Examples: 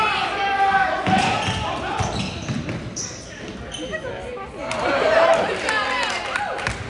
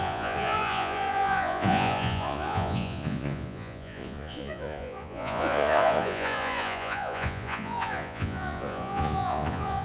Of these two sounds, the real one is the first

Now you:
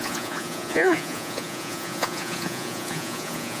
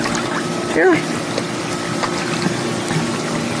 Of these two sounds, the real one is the second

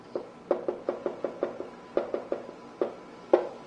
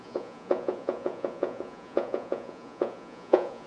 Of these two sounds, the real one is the first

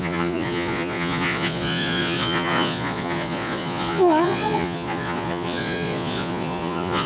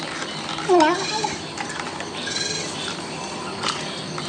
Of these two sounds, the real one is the second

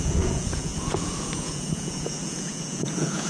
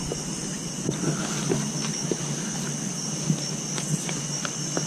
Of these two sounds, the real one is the second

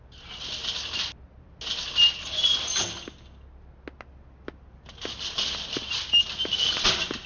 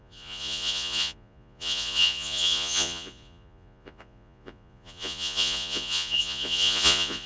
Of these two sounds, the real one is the first